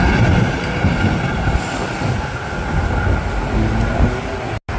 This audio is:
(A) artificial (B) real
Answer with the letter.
B